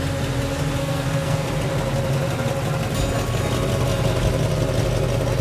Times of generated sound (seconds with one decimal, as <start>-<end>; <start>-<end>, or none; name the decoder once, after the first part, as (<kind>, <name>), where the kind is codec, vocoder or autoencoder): 0.8-1.5 (codec, SNAC)